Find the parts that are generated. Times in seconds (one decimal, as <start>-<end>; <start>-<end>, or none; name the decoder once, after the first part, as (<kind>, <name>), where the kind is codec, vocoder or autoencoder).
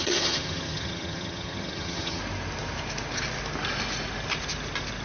0.0-2.2 (vocoder, HiFi-GAN)